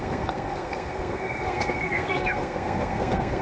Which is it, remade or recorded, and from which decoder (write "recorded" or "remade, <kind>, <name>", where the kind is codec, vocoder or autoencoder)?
remade, codec, SNAC